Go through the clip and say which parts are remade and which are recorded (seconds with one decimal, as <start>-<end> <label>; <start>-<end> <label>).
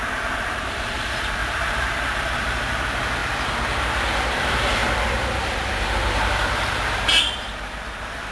0.0-3.2 remade; 3.2-3.8 recorded; 3.8-4.8 remade; 4.8-5.4 recorded; 5.4-8.3 remade